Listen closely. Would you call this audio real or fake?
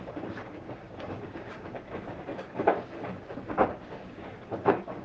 fake